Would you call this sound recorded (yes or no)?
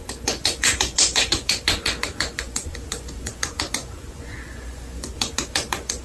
no